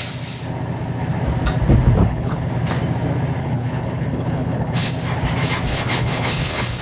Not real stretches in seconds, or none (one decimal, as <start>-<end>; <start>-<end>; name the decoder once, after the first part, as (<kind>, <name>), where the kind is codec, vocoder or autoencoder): 2.0-2.5 (codec, HILCodec); 3.4-4.9; 5.7-6.8